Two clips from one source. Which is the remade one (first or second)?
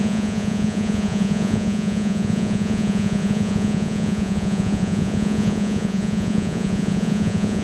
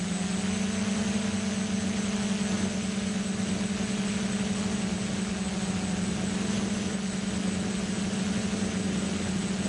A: first